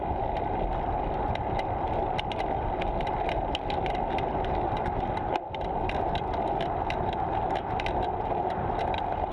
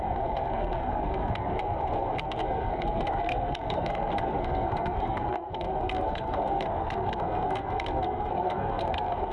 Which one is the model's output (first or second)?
second